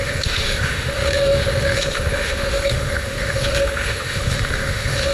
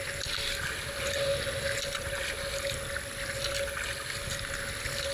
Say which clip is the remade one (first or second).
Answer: first